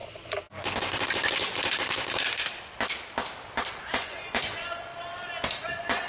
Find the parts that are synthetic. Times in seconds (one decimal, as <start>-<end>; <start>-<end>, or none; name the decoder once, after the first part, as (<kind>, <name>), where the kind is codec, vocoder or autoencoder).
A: 3.7-4.9 (vocoder, Vocos); 5.6-6.1